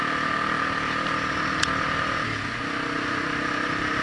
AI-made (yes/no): no